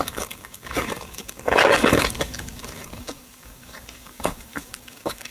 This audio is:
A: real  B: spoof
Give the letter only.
B